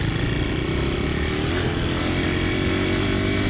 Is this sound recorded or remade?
recorded